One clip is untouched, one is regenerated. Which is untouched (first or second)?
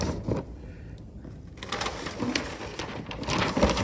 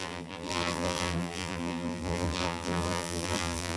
first